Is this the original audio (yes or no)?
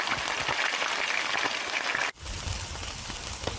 yes